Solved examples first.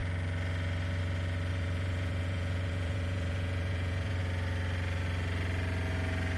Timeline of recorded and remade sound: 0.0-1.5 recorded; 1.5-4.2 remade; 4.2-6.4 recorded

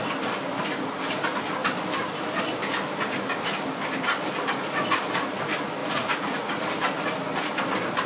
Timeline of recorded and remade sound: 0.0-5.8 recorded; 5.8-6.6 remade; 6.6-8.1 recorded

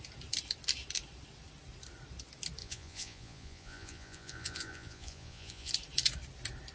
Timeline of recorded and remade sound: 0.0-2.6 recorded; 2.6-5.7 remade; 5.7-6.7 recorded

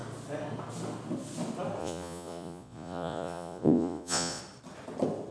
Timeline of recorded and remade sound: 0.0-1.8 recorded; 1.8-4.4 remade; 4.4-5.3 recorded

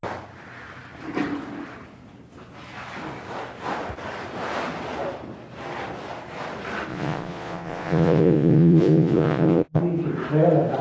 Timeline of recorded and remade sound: 0.0-6.9 recorded; 6.9-9.8 remade; 9.8-10.8 recorded